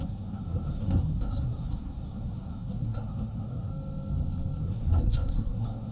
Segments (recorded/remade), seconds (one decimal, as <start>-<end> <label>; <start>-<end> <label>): 0.0-3.7 remade; 3.7-4.6 recorded; 4.6-5.9 remade